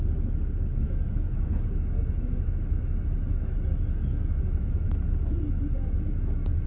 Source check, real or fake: fake